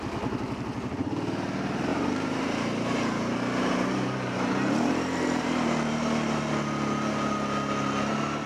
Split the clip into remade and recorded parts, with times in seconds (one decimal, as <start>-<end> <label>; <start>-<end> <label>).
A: 0.0-1.9 recorded; 1.9-6.4 remade; 6.4-8.5 recorded